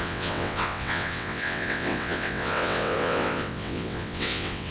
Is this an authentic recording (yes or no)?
no